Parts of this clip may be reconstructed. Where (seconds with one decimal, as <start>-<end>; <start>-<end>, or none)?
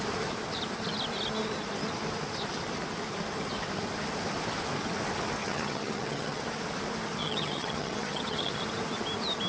5.4-6.4; 7.2-8.6